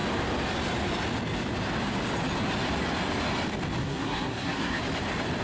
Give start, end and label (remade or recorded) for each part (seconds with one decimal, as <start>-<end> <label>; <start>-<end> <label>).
0.0-3.8 recorded; 3.8-4.8 remade; 4.8-5.4 recorded